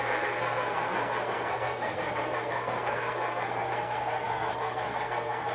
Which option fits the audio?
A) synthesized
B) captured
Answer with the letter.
A